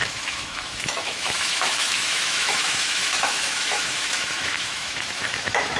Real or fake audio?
fake